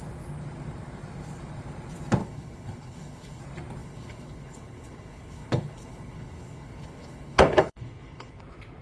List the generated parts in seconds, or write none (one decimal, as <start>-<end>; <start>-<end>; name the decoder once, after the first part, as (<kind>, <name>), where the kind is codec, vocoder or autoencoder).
2.2-3.4 (codec, HILCodec); 3.8-8.4